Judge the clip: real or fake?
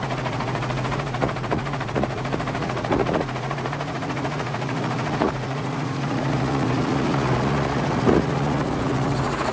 fake